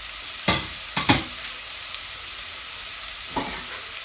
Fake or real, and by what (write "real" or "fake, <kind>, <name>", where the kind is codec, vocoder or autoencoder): real